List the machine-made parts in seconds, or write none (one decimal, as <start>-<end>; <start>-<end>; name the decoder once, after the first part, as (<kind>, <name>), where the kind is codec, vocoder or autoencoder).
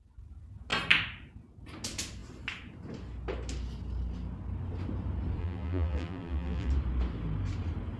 5.4-6.7 (vocoder, BigVGAN v2)